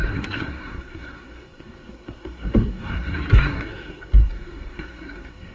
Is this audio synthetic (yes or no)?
yes